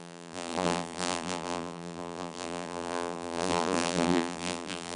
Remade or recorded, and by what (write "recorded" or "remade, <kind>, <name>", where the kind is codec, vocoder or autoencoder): remade, vocoder, BigVGAN v2